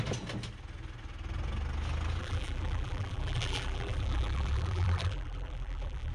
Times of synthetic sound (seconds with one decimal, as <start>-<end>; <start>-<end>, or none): 2.2-6.1